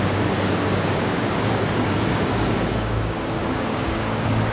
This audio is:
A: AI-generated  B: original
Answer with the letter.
A